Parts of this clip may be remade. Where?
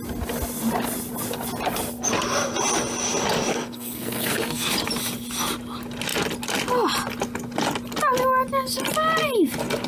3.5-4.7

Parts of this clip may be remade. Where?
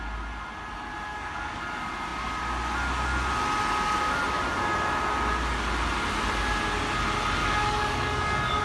1.1-1.6; 7.4-8.6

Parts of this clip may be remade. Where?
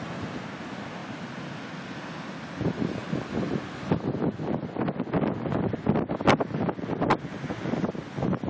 none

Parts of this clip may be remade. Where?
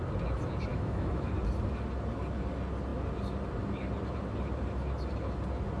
0.7-1.3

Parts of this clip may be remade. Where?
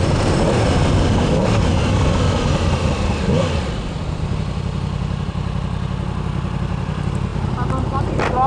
none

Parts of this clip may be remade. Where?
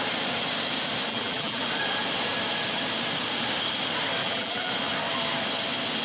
1.1-1.6; 4.2-4.7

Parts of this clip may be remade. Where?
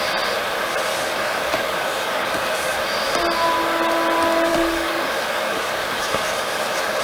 0.9-2.8; 4.5-7.0